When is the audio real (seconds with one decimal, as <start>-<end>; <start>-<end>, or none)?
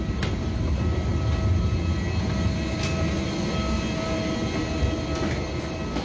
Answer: 0.0-6.0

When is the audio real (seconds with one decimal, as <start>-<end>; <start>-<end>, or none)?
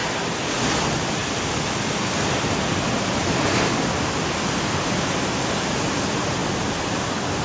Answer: 0.6-6.4